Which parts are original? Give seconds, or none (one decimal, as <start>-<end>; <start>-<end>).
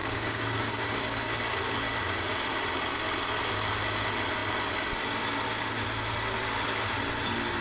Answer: 1.4-7.6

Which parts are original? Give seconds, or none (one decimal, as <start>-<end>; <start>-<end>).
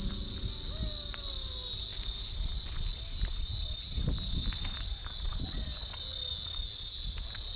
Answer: 0.0-7.6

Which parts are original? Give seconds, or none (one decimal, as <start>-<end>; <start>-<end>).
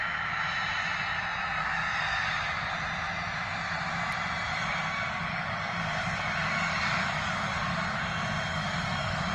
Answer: 0.0-1.6; 2.7-4.5; 8.0-8.5